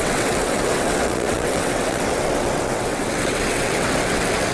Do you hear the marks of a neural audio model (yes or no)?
yes